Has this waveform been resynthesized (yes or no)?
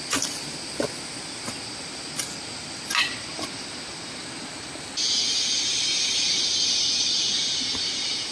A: no